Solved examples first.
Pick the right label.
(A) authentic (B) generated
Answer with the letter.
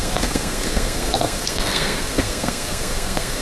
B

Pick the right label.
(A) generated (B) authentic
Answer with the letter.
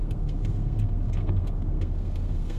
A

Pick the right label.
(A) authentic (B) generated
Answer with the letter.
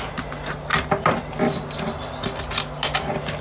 A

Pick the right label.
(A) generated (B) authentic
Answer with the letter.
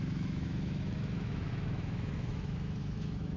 A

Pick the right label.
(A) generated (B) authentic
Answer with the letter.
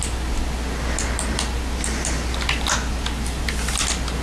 B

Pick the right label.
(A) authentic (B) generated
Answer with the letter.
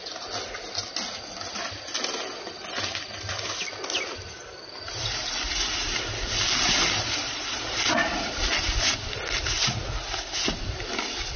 A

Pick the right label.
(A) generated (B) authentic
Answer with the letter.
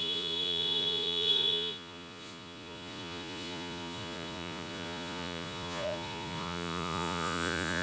A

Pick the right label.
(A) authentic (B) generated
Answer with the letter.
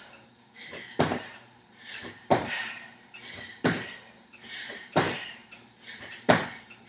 B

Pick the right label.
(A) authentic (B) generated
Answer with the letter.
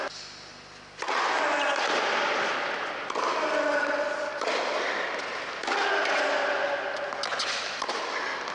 A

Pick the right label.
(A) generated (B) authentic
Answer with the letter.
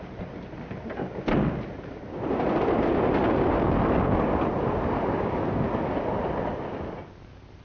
B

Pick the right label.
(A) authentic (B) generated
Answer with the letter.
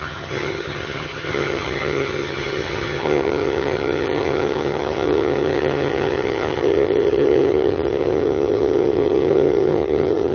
B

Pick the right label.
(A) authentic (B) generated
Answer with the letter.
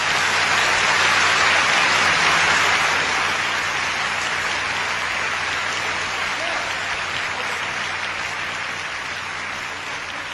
A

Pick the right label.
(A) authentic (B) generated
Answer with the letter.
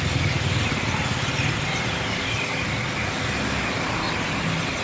A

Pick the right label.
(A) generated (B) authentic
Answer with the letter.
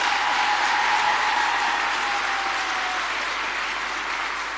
B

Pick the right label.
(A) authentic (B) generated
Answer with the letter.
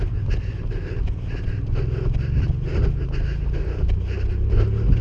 A